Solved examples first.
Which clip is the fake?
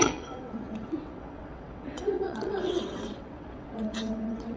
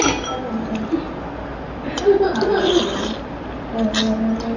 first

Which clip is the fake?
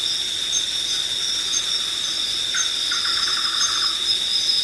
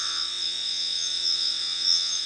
second